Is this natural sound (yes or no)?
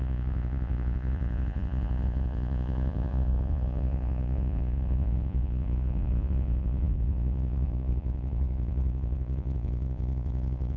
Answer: no